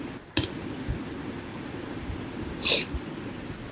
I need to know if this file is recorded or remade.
remade